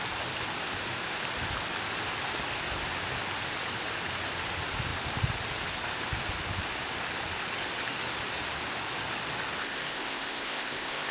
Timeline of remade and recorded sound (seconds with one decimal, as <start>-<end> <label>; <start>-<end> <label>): 0.0-9.6 recorded; 9.6-11.1 remade